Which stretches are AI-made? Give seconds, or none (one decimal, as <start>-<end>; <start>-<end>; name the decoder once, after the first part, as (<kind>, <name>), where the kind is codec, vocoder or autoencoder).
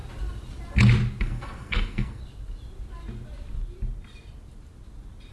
1.2-2.2 (codec, SNAC)